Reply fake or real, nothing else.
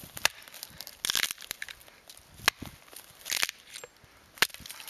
real